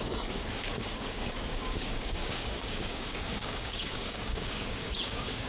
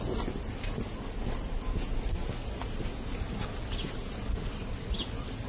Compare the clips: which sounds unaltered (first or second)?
second